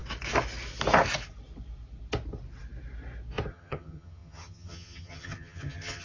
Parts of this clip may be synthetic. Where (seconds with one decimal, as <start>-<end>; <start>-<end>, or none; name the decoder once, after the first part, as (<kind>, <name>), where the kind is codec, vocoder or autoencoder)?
3.5-6.0 (vocoder, HiFi-GAN)